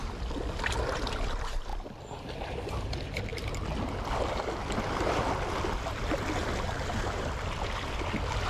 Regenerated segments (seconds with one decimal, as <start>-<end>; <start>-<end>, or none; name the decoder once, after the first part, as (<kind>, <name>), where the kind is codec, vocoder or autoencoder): none